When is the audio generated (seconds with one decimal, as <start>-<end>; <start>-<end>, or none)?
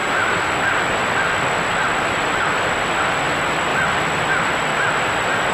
none